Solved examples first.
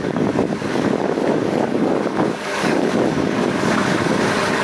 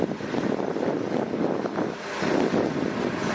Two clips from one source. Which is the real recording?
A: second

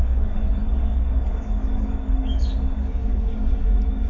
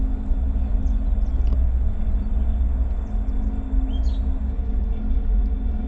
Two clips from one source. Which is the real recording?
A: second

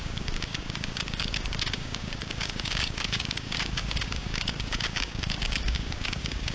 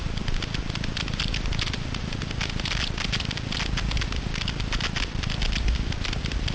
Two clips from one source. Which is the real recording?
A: second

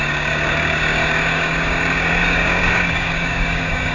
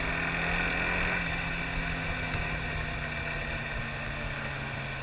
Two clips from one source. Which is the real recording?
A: second